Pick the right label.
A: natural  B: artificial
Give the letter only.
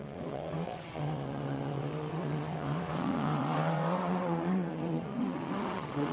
B